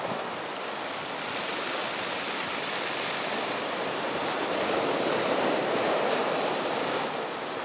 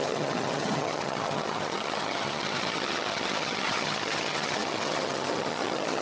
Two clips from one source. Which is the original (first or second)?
first